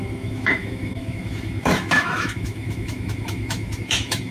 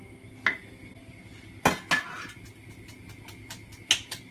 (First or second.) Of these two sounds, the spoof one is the first